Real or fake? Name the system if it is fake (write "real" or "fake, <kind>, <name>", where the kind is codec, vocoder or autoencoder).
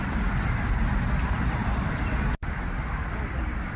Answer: real